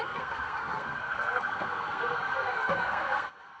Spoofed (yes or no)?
yes